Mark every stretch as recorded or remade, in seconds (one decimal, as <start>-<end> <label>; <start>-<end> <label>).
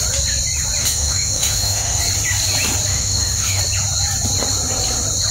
0.0-0.8 recorded; 0.8-2.0 remade; 2.0-2.9 recorded; 2.9-3.6 remade; 3.6-5.3 recorded